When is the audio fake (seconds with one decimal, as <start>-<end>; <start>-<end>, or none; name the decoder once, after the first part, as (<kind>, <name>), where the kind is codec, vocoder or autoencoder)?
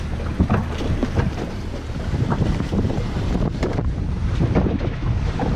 1.0-4.4 (vocoder, BigVGAN v2)